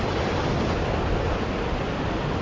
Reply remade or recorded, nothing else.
recorded